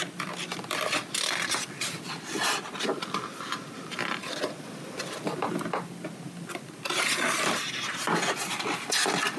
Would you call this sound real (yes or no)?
yes